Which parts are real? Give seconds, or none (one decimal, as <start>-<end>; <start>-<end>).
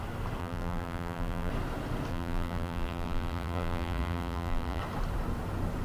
0.0-0.4; 1.5-2.1; 4.8-5.8